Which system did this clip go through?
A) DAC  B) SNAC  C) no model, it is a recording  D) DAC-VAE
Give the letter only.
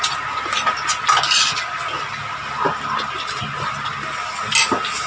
C